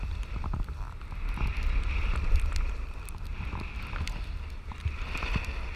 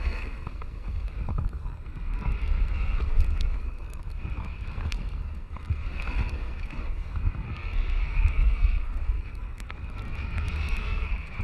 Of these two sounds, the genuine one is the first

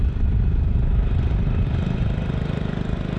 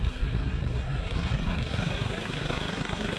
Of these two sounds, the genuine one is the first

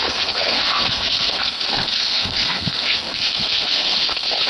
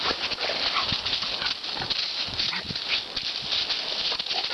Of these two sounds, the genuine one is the second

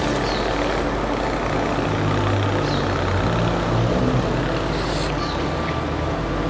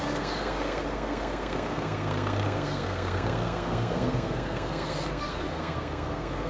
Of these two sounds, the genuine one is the first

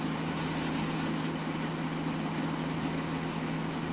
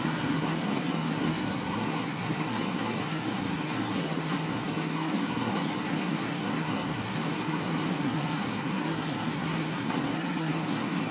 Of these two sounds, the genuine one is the first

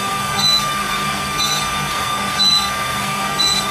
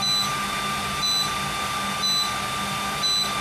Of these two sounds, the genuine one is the second